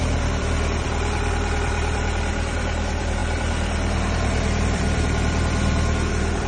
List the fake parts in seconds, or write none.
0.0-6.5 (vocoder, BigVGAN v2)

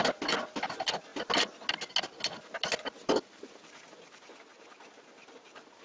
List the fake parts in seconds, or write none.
none

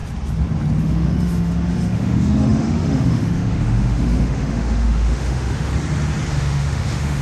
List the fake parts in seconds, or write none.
0.8-5.7 (autoencoder, DAC-VAE); 6.3-7.2